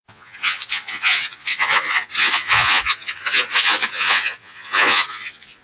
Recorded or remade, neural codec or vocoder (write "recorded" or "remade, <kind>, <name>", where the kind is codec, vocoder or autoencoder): remade, vocoder, Vocos